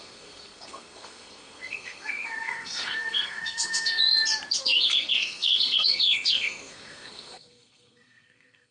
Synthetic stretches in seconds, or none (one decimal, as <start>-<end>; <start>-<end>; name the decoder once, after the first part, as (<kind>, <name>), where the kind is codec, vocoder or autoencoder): 0.0-4.0 (codec, SNAC); 4.6-8.7